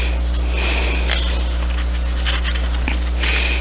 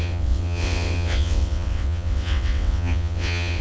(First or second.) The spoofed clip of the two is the second